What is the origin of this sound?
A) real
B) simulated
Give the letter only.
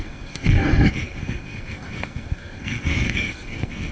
B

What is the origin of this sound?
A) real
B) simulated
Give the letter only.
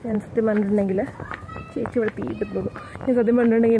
B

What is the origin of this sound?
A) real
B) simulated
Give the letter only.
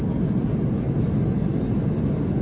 A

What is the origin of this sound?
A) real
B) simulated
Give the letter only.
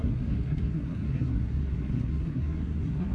B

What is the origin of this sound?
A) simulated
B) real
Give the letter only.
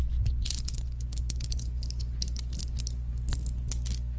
B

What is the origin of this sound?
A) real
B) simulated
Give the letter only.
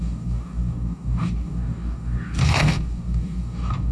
B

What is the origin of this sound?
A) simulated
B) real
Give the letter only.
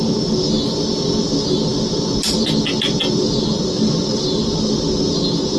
B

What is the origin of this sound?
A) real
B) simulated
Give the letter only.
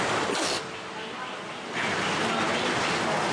A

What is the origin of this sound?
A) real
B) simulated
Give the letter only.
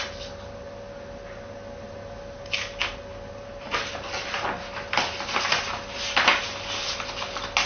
A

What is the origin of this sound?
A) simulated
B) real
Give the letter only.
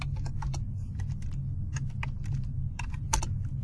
B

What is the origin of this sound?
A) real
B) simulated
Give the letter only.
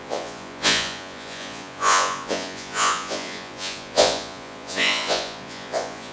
B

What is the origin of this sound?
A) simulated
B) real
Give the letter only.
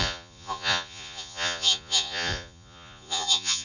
A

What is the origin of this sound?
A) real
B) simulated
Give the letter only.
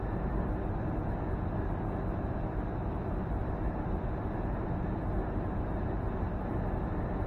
A